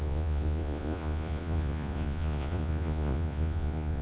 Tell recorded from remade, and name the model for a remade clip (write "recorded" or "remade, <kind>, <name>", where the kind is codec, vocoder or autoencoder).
remade, vocoder, Vocos